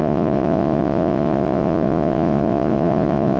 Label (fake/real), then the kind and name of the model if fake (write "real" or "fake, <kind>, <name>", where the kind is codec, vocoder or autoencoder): fake, vocoder, Vocos